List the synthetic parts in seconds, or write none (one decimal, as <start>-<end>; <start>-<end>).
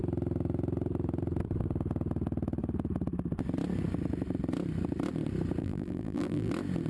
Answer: 5.6-6.5